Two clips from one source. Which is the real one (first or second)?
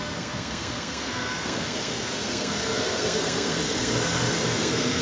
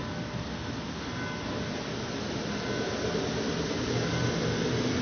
second